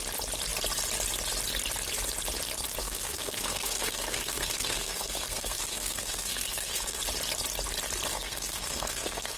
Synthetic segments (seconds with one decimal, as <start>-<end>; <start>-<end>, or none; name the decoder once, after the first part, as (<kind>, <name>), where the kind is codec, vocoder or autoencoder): 2.8-7.0 (codec, SNAC); 8.1-9.4